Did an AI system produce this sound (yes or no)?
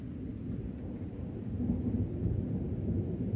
no